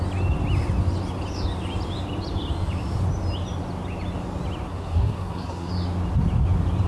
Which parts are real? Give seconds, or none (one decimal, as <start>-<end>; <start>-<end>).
0.0-4.7; 5.7-6.9